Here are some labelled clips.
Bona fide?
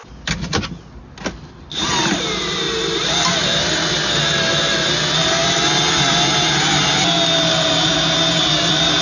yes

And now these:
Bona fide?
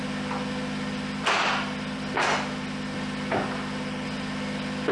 yes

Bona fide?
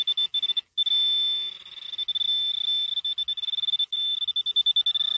yes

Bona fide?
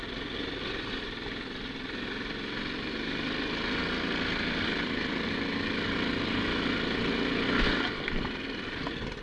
yes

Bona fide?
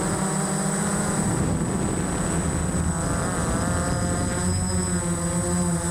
yes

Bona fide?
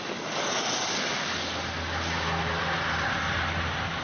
yes